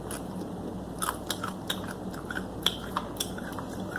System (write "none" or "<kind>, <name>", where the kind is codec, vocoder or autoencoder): none